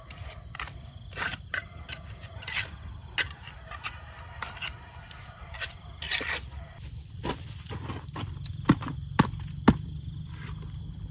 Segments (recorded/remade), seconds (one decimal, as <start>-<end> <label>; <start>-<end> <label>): 0.0-11.1 recorded